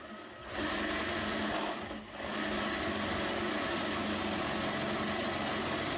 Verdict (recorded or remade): recorded